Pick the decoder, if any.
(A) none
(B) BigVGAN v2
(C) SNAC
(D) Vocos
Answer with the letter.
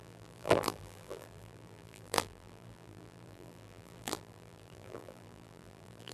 B